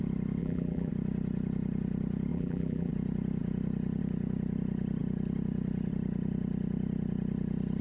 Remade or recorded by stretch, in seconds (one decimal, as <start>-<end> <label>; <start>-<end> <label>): 0.0-0.4 recorded; 0.4-0.9 remade; 0.9-2.3 recorded; 2.3-2.9 remade; 2.9-7.8 recorded